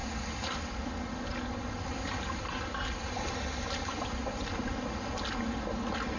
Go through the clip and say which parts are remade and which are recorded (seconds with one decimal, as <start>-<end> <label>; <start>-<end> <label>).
0.0-6.2 recorded